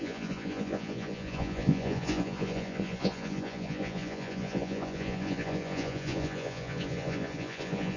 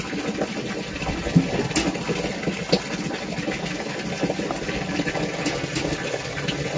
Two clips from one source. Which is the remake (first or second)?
first